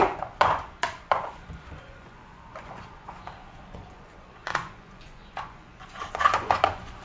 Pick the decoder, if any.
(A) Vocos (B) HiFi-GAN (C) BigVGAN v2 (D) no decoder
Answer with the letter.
A